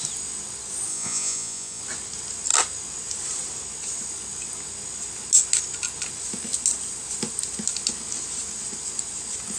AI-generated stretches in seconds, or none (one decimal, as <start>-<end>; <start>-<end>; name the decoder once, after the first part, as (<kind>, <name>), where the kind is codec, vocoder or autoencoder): 0.9-1.8 (vocoder, Vocos)

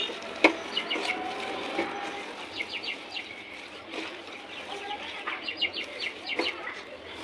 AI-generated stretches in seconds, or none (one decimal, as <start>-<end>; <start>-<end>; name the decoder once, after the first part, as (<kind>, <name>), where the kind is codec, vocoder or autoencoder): 2.9-4.3 (vocoder, BigVGAN v2)

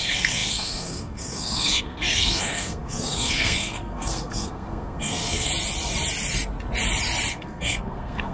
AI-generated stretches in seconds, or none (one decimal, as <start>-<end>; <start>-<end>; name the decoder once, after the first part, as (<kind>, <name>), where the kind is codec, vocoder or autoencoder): 0.0-5.5 (codec, SNAC); 7.3-8.3